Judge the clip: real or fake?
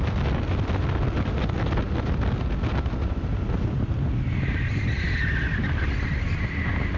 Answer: real